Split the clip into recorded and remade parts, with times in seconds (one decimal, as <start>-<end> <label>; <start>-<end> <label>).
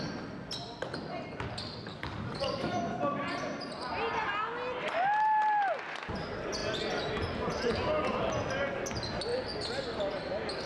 0.0-1.9 recorded; 1.9-2.8 remade; 2.8-10.7 recorded